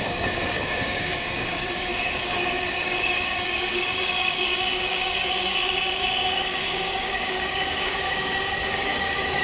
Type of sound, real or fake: fake